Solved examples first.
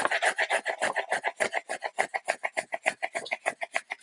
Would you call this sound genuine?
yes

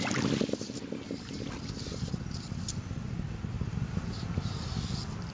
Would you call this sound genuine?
yes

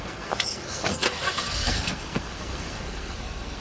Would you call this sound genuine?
no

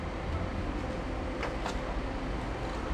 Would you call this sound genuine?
yes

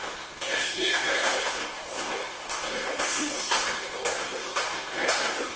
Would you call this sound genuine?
no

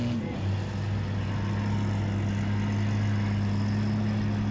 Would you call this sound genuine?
yes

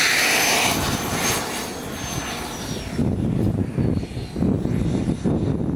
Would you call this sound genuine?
yes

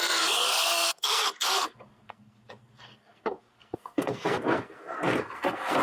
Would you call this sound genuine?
no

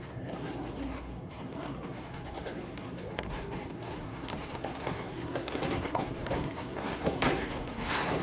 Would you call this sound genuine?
no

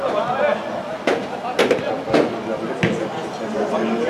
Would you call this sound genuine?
yes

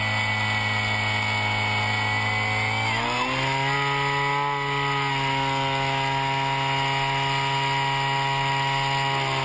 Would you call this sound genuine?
yes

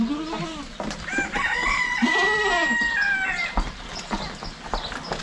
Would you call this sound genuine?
yes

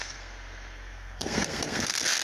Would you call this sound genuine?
no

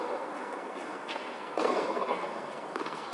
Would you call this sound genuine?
no